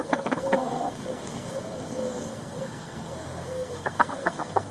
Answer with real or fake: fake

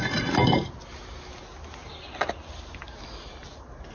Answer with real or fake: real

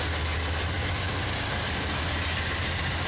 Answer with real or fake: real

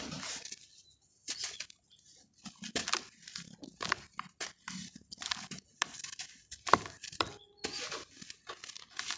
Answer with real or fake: real